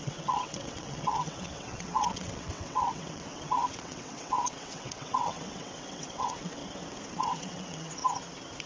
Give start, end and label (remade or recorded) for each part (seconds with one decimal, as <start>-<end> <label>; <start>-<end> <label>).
0.0-6.6 remade; 6.6-7.1 recorded; 7.1-8.0 remade; 8.0-8.7 recorded